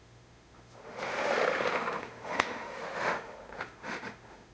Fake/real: fake